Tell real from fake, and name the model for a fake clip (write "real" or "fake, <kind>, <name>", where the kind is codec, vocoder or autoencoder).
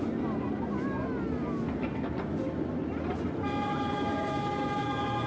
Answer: real